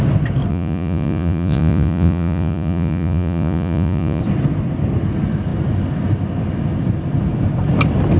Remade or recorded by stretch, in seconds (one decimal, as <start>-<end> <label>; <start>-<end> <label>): 0.0-0.5 recorded; 0.5-4.2 remade; 4.2-8.2 recorded